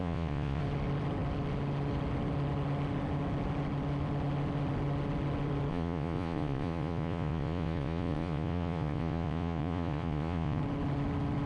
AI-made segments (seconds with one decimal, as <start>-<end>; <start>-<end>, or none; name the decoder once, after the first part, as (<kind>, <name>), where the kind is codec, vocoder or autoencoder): 0.0-0.6 (vocoder, Vocos); 5.7-10.6

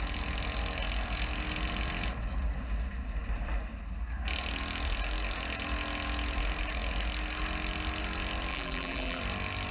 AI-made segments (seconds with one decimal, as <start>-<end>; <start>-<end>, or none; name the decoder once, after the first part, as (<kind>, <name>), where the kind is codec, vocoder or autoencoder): 8.5-9.2 (vocoder, BigVGAN v2)

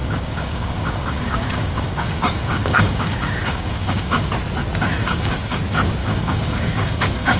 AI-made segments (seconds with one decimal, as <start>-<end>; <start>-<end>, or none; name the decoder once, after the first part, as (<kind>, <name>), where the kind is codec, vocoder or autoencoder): 0.0-4.3 (codec, DAC); 4.9-5.6; 6.0-7.4

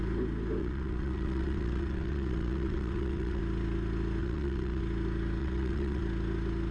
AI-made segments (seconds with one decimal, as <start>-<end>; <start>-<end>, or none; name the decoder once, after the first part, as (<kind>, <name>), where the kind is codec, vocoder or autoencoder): 0.6-3.4 (vocoder, WaveNeXt); 4.2-4.8; 5.4-6.0